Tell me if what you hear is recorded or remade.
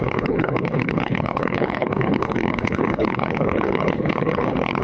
remade